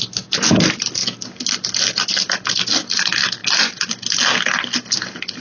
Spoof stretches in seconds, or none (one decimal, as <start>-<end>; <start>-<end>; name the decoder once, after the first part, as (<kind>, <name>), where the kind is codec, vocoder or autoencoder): none